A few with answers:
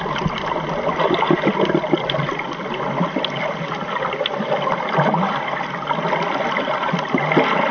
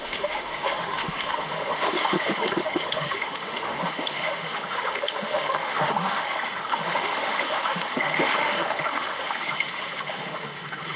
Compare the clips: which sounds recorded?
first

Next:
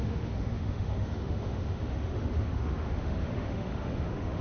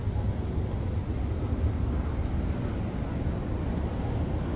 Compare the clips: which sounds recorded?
second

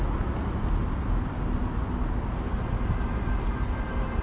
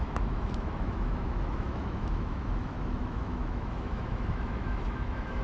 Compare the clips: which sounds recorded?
first